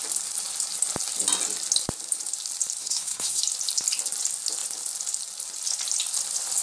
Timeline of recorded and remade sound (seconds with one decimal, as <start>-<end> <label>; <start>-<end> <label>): 0.0-2.8 recorded; 2.8-3.4 remade; 3.4-6.6 recorded